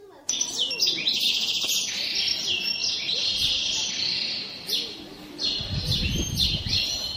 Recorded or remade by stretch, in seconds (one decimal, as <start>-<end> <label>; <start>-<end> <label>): 0.0-7.2 recorded